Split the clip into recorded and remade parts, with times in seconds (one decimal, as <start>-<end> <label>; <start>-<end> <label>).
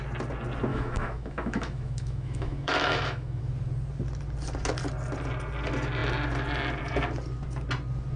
0.0-0.7 recorded; 0.7-3.4 remade; 3.4-8.2 recorded